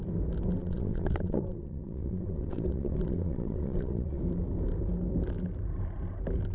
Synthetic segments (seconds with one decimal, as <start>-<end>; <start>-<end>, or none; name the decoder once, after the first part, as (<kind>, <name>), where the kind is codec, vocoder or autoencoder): 0.6-4.2 (vocoder, WaveNeXt)